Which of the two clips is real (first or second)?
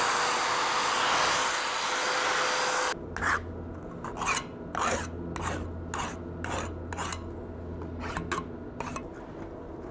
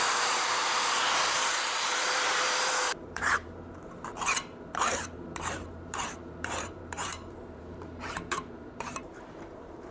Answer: first